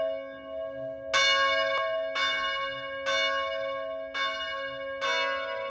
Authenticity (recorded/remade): recorded